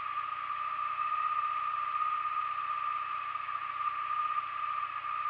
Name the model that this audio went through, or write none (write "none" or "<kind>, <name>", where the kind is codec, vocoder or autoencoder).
none